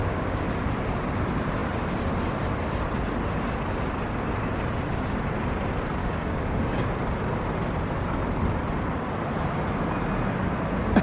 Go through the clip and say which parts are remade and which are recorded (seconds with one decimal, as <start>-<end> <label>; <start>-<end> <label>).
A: 0.0-0.5 remade; 0.5-6.0 recorded; 6.0-6.9 remade; 6.9-11.0 recorded